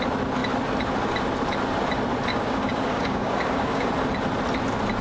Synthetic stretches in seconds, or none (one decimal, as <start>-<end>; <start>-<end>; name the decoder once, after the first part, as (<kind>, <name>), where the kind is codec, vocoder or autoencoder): 2.3-3.9 (codec, DAC)